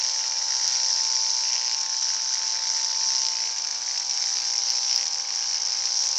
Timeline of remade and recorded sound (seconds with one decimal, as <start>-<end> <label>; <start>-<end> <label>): 0.0-6.2 recorded